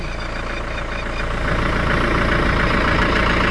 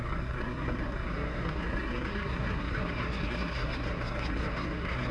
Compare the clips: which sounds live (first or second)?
first